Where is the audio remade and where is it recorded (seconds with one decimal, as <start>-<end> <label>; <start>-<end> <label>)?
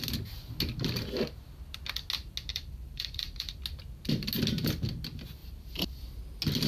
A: 0.0-2.5 recorded; 2.5-3.6 remade; 3.6-5.4 recorded; 5.4-6.0 remade; 6.0-6.7 recorded